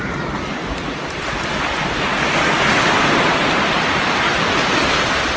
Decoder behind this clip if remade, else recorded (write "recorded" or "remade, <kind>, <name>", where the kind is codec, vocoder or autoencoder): recorded